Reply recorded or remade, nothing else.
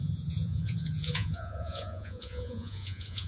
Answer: remade